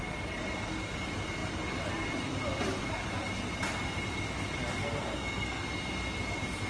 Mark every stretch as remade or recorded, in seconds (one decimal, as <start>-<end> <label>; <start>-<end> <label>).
0.0-4.8 recorded; 4.8-5.6 remade; 5.6-6.7 recorded